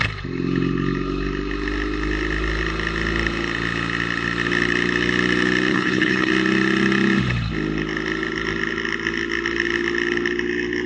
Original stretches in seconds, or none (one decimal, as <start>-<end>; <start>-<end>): 0.0-5.7; 6.3-10.9